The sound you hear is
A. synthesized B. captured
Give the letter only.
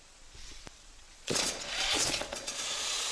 A